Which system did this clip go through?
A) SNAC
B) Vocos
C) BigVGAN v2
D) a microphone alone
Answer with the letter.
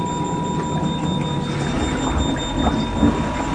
D